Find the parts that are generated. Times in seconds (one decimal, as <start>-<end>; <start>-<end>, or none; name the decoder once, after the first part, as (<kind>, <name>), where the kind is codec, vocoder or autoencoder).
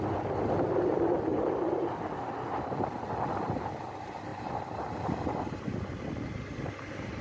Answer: none